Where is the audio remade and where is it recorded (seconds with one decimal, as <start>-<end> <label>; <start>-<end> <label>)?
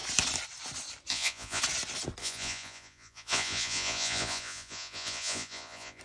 0.0-1.1 recorded; 1.1-1.6 remade; 1.6-2.2 recorded; 2.2-6.0 remade